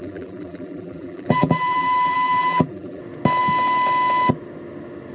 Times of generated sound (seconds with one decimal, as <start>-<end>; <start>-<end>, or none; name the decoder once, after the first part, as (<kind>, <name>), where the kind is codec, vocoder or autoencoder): 0.0-3.0 (vocoder, BigVGAN v2)